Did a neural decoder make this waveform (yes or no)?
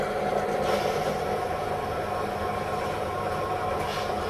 no